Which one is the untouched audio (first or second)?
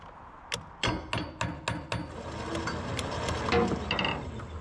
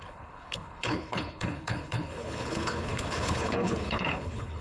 first